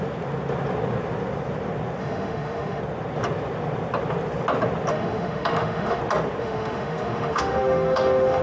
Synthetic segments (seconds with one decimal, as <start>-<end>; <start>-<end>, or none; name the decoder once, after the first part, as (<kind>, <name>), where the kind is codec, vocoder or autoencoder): 2.0-2.8 (autoencoder, DAC-VAE); 4.9-6.0; 6.4-8.4